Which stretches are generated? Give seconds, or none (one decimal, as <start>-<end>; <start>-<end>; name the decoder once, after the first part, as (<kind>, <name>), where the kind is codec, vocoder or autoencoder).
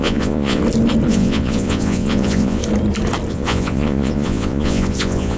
0.0-0.6 (vocoder, Vocos); 1.1-2.6; 3.3-5.4